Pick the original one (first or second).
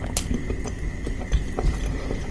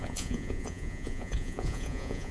first